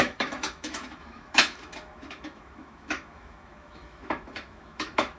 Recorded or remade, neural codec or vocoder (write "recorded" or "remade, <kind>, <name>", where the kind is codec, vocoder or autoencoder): remade, autoencoder, DAC-VAE